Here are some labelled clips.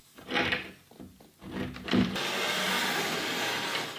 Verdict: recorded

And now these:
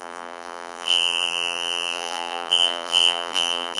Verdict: remade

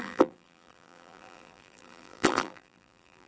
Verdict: remade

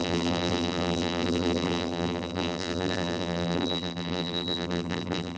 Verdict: remade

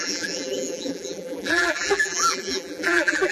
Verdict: remade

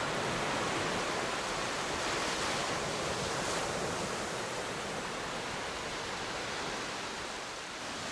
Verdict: recorded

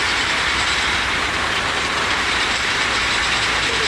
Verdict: remade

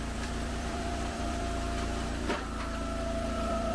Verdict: remade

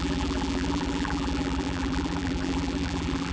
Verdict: remade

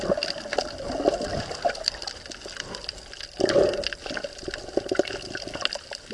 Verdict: recorded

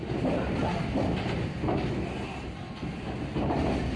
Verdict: recorded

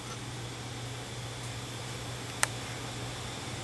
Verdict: recorded